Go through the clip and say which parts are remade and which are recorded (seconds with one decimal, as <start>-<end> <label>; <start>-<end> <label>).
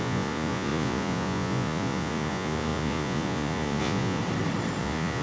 0.0-4.2 remade; 4.2-4.8 recorded; 4.8-5.2 remade